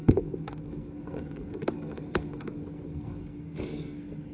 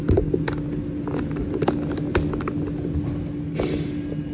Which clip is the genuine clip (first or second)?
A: second